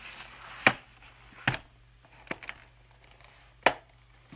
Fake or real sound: real